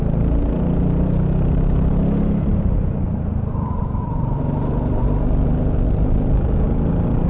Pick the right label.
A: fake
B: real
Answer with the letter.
B